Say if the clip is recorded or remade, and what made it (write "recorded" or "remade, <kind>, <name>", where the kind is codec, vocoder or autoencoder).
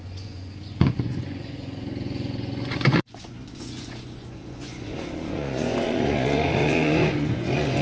remade, vocoder, Vocos